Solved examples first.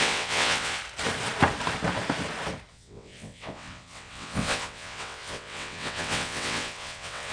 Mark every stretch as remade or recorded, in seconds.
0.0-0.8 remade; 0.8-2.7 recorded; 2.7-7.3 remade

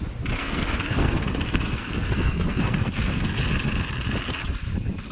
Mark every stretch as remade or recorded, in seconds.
0.0-0.4 recorded; 0.4-3.4 remade; 3.4-5.1 recorded

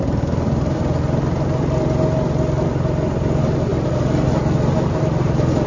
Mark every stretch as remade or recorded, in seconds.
0.0-5.7 recorded